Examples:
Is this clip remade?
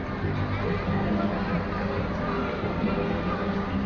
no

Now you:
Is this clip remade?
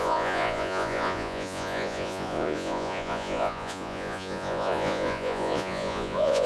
yes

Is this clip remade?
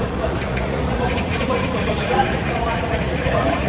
yes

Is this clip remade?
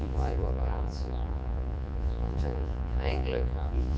yes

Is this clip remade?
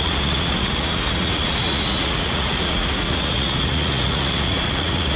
yes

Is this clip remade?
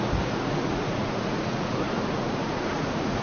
yes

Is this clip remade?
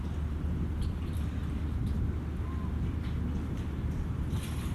no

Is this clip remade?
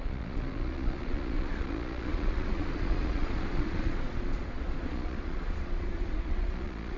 yes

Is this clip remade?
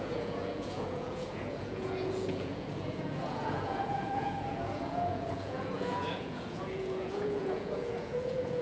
yes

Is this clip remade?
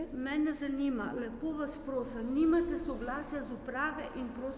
no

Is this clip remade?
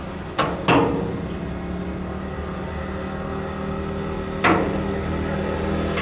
no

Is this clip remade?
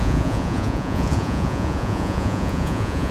yes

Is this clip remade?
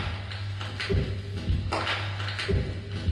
no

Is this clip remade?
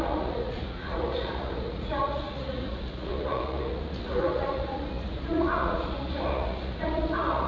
yes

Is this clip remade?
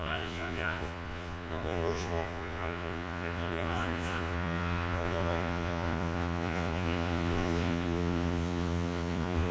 yes